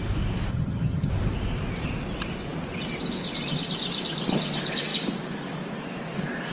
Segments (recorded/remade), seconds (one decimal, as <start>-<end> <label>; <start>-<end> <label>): 0.0-0.5 recorded; 0.5-1.1 remade; 1.1-6.5 recorded